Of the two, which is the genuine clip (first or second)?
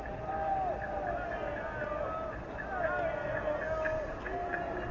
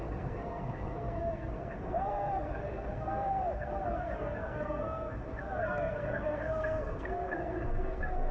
first